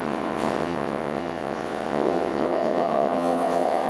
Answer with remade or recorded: remade